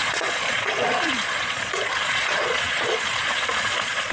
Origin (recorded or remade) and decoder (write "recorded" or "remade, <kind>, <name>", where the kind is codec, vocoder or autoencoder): remade, vocoder, Vocos